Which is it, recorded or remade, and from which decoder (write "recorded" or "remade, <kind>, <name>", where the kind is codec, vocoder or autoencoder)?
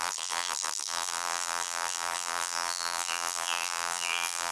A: remade, vocoder, BigVGAN v2